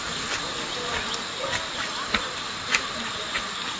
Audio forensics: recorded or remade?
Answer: recorded